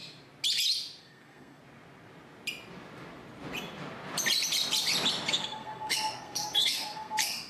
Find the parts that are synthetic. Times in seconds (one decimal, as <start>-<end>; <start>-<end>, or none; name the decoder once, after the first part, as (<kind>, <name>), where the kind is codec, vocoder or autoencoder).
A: 1.0-1.6 (codec, SNAC); 5.3-7.5